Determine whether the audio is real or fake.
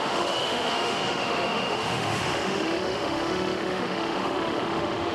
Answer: fake